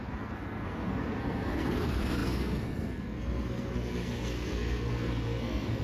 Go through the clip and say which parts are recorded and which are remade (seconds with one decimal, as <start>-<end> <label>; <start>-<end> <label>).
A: 0.0-5.8 remade